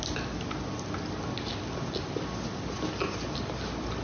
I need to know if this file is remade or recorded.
recorded